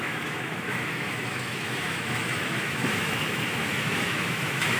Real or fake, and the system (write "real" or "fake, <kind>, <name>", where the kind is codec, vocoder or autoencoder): fake, autoencoder, DAC-VAE